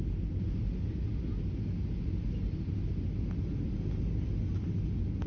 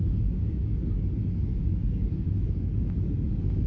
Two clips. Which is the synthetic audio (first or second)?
second